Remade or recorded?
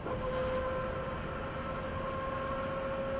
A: recorded